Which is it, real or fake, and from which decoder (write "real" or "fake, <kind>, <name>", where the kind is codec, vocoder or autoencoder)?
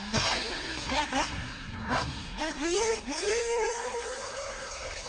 fake, codec, SNAC